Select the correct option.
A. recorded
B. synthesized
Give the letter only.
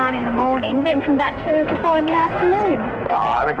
B